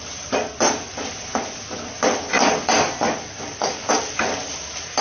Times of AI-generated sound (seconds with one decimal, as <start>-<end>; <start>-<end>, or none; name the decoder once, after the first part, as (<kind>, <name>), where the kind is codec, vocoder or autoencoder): none